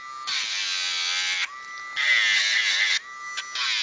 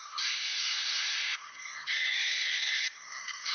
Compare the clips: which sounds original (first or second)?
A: first